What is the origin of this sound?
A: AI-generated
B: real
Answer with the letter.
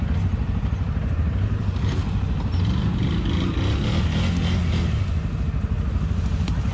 B